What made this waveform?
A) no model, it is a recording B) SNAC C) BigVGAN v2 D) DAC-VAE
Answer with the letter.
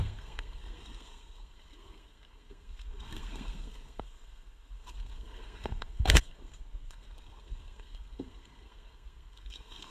B